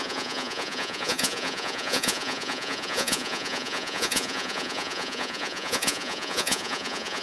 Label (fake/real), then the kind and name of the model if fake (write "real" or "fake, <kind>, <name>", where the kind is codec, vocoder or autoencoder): fake, vocoder, Vocos